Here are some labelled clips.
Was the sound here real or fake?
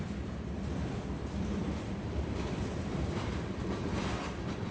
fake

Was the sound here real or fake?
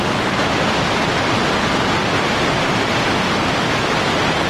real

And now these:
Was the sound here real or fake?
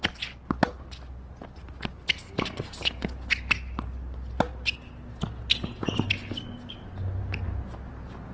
real